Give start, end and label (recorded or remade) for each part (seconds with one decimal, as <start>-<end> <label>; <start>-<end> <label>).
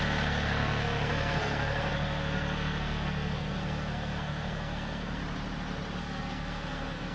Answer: 0.0-5.2 remade; 5.2-6.0 recorded; 6.0-7.1 remade